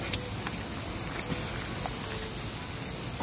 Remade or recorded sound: recorded